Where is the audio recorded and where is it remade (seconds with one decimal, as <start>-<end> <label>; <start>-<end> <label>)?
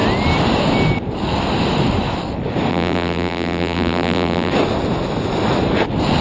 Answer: 0.0-2.7 recorded; 2.7-4.5 remade; 4.5-6.2 recorded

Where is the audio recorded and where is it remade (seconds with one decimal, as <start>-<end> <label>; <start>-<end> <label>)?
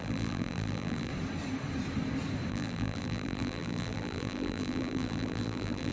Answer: 0.0-1.1 remade; 1.1-2.5 recorded; 2.5-5.9 remade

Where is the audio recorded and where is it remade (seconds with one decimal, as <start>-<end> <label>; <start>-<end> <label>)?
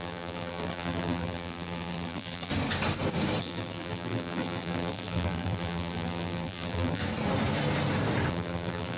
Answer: 0.0-2.5 remade; 2.5-3.4 recorded; 3.4-7.0 remade; 7.0-8.3 recorded; 8.3-9.0 remade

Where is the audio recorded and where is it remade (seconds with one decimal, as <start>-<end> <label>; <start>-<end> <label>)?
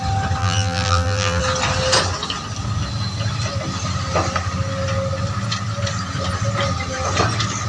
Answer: 0.0-0.4 recorded; 0.4-1.4 remade; 1.4-7.7 recorded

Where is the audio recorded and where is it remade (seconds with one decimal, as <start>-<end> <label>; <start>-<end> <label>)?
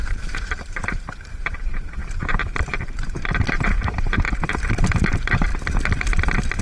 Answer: 0.0-5.5 remade; 5.5-6.6 recorded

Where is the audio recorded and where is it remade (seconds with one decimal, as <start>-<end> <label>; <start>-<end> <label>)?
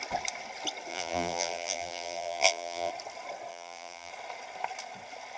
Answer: 0.0-0.9 recorded; 0.9-2.9 remade; 2.9-3.5 recorded; 3.5-4.1 remade; 4.1-5.4 recorded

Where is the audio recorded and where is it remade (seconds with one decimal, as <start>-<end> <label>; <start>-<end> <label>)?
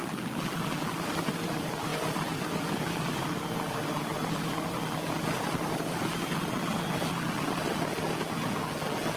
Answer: 0.0-9.2 recorded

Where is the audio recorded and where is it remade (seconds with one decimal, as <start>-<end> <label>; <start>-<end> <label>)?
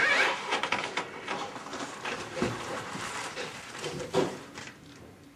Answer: 0.0-5.4 remade